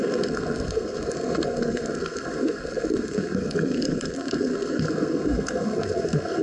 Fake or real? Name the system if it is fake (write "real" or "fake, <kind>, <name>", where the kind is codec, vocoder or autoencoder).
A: fake, codec, SNAC